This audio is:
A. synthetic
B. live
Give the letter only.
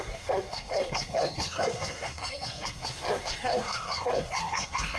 A